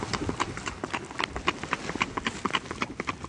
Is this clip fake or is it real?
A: real